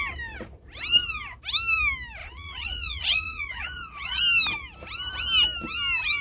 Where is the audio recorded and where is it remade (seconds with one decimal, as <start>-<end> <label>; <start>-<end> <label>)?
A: 0.0-2.2 recorded; 2.2-4.2 remade; 4.2-6.2 recorded